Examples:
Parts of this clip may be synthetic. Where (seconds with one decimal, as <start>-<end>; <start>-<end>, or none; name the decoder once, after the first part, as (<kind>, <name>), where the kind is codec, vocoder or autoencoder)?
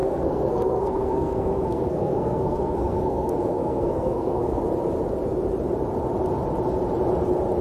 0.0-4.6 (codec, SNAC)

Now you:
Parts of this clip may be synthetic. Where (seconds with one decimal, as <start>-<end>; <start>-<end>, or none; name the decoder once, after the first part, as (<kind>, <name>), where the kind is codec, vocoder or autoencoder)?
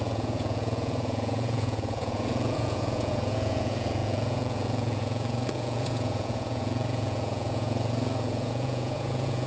0.0-9.5 (vocoder, Vocos)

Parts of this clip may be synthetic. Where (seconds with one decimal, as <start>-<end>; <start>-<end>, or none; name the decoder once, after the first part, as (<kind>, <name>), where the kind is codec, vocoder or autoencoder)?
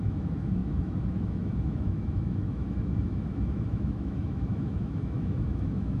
0.0-6.0 (autoencoder, DAC-VAE)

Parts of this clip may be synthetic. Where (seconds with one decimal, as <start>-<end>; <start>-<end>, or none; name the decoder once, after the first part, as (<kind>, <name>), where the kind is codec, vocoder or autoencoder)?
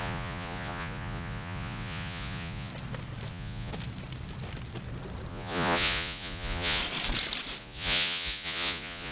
0.0-2.7 (vocoder, Vocos); 3.3-3.7; 5.3-6.8; 7.6-9.1